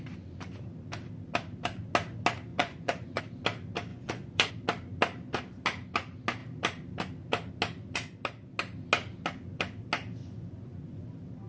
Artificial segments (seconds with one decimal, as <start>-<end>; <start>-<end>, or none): 2.5-3.2; 3.9-4.5; 10.2-11.0